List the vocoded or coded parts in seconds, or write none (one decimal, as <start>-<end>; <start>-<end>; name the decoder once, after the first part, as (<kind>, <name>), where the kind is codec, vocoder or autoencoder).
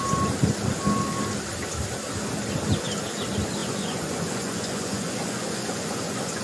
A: 3.6-6.4 (vocoder, Vocos)